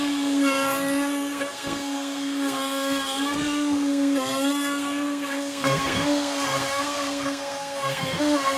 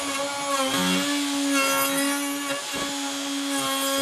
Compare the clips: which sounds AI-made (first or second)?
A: first